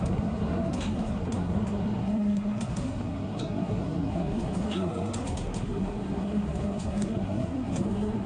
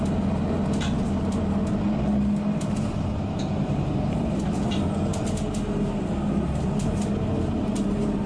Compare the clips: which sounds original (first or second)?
second